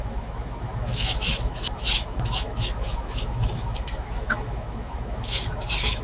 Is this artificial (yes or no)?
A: yes